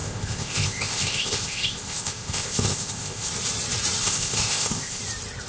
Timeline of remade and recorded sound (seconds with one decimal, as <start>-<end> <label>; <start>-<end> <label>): 0.0-3.3 remade; 3.3-4.0 recorded; 4.0-5.0 remade; 5.0-5.5 recorded